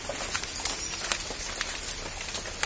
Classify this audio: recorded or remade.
recorded